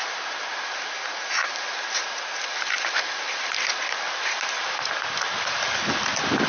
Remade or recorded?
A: recorded